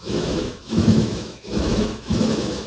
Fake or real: fake